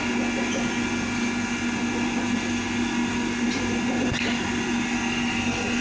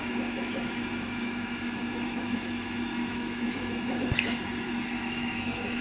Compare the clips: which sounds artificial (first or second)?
second